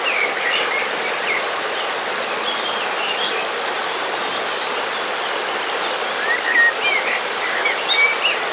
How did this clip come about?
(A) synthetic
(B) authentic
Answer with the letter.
B